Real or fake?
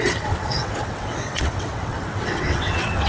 fake